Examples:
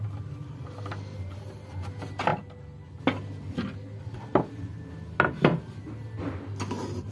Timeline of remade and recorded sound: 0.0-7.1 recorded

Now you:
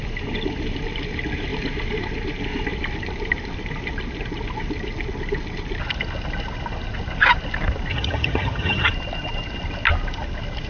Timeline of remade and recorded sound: 0.0-7.9 recorded; 7.9-8.9 remade; 8.9-10.7 recorded

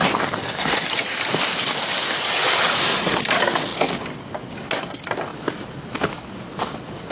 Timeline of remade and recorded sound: 0.0-2.8 recorded; 2.8-3.3 remade; 3.3-7.1 recorded

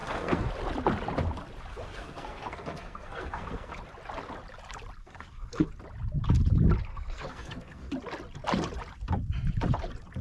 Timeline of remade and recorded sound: 0.0-0.5 remade; 0.5-1.7 recorded; 1.7-3.7 remade; 3.7-5.0 recorded; 5.0-5.7 remade; 5.7-6.9 recorded; 6.9-7.9 remade; 7.9-10.2 recorded